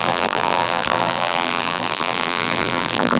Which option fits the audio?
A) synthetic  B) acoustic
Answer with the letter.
A